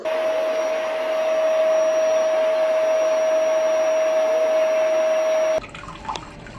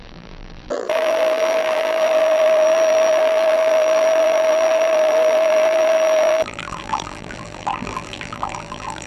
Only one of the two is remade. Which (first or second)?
second